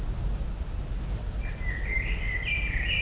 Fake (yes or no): no